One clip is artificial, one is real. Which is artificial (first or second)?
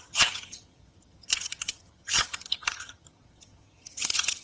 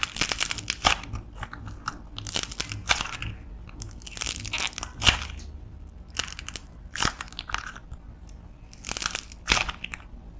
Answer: first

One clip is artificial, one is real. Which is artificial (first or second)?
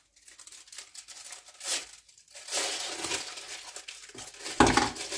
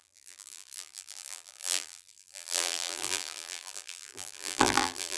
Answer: second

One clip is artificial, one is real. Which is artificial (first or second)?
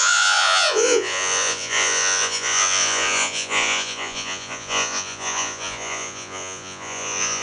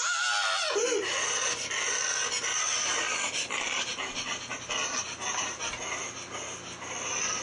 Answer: first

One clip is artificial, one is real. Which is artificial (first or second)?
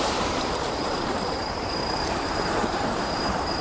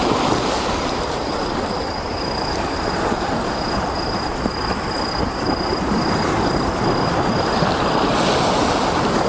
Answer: first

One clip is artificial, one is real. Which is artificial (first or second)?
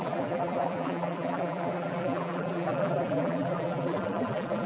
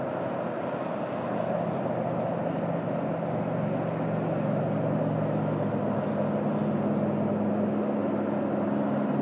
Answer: first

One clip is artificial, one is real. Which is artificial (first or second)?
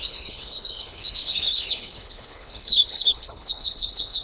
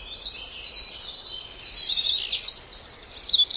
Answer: first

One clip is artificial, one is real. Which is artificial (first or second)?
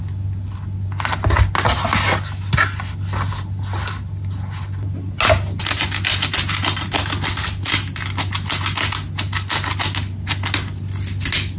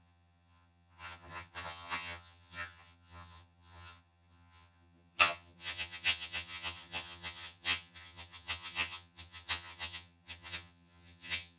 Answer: second